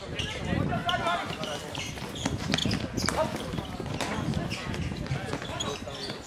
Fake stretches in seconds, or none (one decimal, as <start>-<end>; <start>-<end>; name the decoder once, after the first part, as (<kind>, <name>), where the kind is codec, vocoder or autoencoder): none

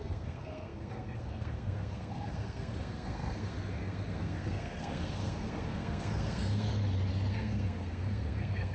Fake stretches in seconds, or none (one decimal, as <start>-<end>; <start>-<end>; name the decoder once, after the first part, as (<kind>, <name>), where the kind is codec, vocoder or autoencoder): 0.0-6.7 (codec, SNAC); 7.3-8.7